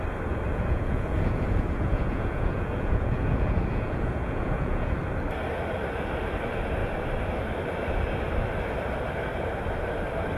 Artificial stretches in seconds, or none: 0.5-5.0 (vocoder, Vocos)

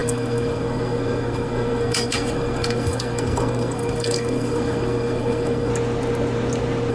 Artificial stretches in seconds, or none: 0.0-5.7 (codec, SNAC)

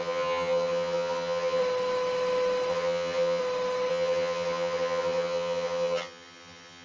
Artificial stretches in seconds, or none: 0.0-1.6 (vocoder, HiFi-GAN); 2.7-3.4; 3.9-6.8

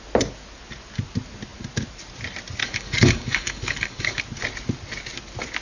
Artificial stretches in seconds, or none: 2.6-4.2 (codec, DAC)

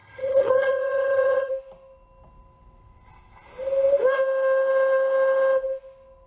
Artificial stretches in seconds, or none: 0.0-1.5 (vocoder, HiFi-GAN)

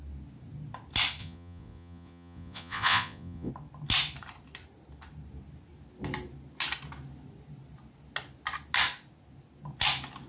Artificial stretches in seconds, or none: 1.2-3.5 (vocoder, Vocos)

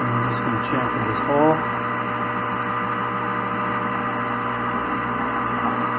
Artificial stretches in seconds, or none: none